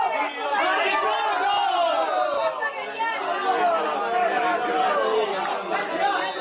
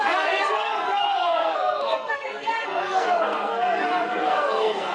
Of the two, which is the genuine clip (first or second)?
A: first